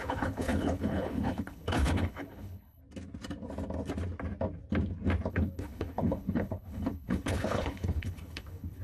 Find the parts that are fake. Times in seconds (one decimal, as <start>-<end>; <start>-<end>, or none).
0.0-2.8; 5.3-8.8